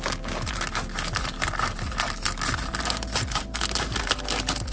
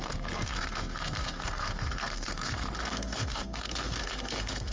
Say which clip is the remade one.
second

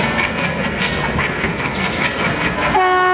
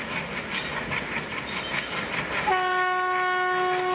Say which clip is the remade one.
first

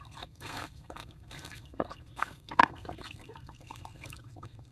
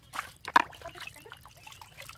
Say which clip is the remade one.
first